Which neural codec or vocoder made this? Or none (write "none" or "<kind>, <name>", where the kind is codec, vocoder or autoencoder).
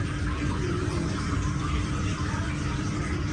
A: vocoder, BigVGAN v2